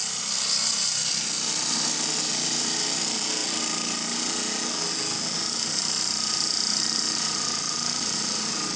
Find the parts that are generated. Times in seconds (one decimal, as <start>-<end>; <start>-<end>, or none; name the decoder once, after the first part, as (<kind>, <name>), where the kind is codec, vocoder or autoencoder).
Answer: none